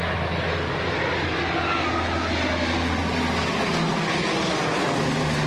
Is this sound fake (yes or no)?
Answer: no